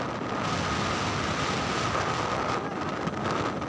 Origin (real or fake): real